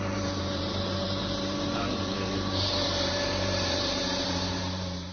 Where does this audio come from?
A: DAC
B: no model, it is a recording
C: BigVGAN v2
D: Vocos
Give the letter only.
C